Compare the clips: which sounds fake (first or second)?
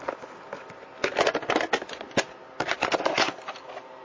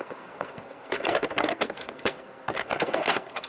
second